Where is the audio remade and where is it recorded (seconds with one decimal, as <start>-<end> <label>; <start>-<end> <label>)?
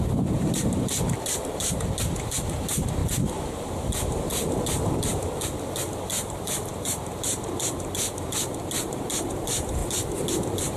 0.0-9.8 remade; 9.8-10.4 recorded; 10.4-10.8 remade